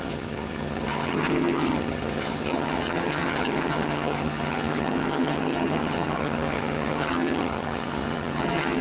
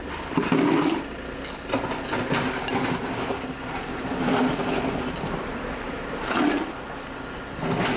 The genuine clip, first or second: second